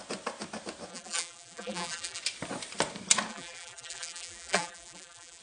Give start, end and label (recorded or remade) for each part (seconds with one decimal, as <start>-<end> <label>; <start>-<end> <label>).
0.0-0.9 recorded; 0.9-2.2 remade; 2.2-3.3 recorded; 3.3-5.4 remade